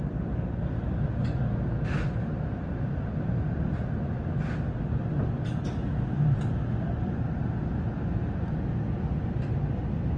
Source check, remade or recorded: recorded